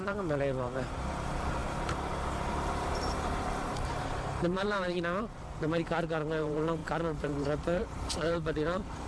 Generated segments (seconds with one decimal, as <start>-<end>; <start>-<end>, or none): 0.0-9.1